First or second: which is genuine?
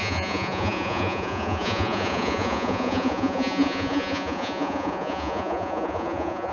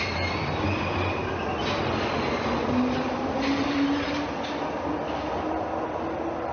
second